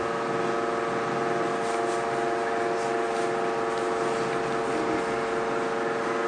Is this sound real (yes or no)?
yes